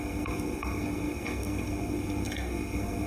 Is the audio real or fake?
fake